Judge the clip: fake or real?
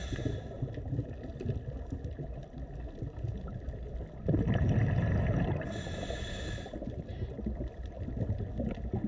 real